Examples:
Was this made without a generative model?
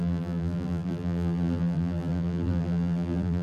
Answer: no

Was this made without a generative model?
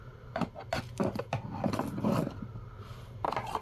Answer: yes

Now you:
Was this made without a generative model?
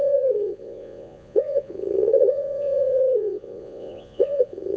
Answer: no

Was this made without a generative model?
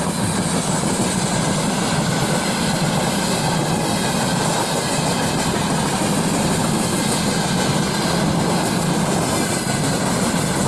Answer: yes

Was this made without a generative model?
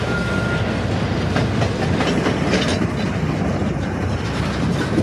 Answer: yes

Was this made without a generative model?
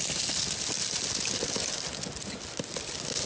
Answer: yes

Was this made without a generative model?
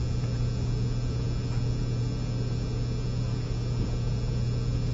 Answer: yes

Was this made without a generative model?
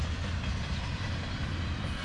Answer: yes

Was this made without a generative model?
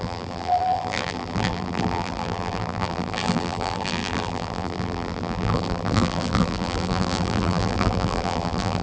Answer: no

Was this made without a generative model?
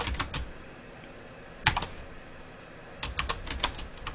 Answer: yes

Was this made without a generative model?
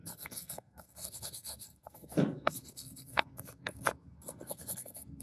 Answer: no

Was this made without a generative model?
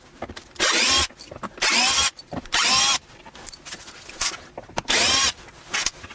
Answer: yes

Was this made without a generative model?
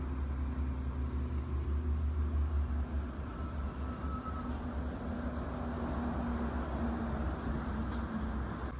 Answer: yes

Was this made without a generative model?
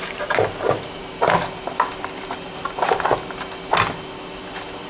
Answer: yes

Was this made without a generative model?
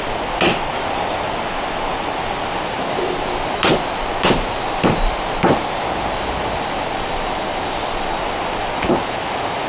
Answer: yes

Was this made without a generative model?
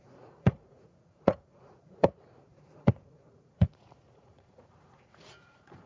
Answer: no